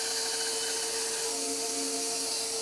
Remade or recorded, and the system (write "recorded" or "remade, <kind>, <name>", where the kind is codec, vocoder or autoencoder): recorded